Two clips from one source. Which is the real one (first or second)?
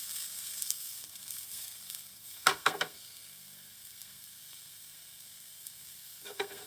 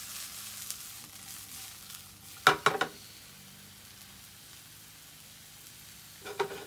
second